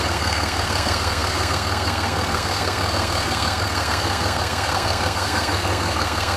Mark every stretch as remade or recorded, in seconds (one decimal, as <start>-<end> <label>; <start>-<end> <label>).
0.0-6.4 remade

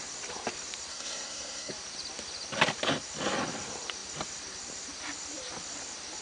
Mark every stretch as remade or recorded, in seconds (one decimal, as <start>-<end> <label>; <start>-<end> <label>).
0.0-0.9 recorded; 0.9-1.7 remade; 1.7-6.2 recorded

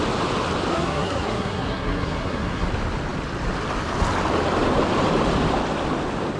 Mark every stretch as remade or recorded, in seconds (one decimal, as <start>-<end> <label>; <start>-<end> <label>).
0.0-0.7 recorded; 0.7-2.7 remade; 2.7-6.4 recorded